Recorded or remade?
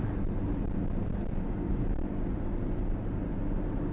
recorded